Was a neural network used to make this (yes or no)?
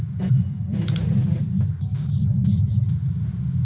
yes